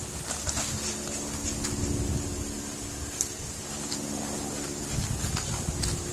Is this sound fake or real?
real